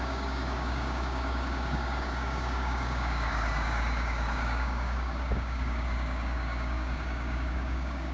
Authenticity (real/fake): fake